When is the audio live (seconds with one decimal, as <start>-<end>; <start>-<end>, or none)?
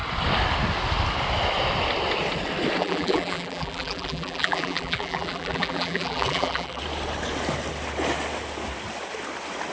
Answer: 0.0-2.8; 6.8-9.7